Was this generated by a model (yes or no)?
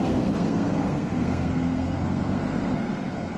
yes